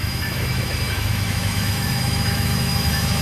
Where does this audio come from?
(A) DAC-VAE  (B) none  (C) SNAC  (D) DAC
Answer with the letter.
A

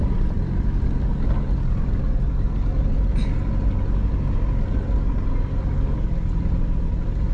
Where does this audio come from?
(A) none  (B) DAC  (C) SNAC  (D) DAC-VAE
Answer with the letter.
A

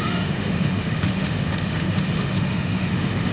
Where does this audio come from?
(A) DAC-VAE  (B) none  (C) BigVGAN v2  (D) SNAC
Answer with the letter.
A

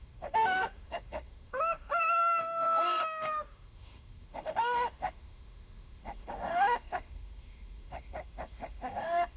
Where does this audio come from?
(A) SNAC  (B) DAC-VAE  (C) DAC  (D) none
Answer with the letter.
B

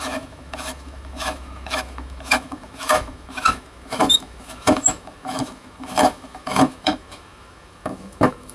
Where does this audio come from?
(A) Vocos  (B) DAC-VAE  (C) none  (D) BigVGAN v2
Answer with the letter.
B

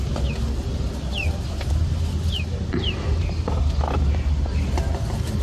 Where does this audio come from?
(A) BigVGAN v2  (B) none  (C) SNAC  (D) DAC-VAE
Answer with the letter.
B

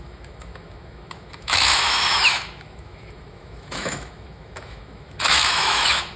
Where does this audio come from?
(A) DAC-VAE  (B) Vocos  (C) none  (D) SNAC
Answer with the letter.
A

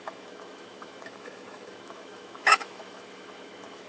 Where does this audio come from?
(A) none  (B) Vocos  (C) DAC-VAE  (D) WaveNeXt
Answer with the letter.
C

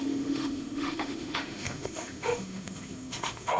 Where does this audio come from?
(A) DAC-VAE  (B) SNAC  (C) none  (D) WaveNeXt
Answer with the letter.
A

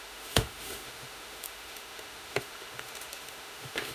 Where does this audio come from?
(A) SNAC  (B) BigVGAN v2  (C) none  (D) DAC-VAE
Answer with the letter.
D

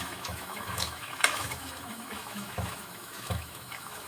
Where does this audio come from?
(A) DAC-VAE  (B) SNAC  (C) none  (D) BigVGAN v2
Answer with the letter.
A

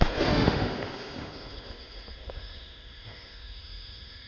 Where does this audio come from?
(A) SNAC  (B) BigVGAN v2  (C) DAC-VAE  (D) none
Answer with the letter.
C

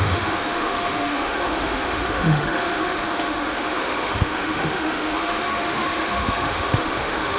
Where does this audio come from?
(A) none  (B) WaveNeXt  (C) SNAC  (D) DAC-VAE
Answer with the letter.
D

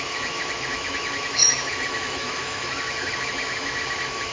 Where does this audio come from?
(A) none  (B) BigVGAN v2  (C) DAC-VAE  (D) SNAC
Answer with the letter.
C